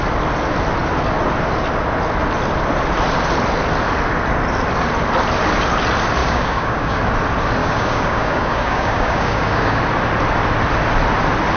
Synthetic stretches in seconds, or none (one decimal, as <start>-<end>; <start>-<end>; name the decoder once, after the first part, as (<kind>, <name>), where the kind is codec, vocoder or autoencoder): 6.2-7.0 (codec, DAC); 7.6-9.8